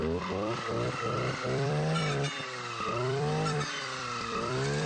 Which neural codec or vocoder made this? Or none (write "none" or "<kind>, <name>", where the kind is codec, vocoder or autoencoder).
vocoder, BigVGAN v2